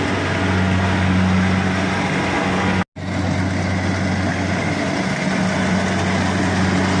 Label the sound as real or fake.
real